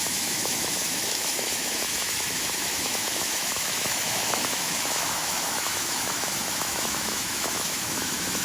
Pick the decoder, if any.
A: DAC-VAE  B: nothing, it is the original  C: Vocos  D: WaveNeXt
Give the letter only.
A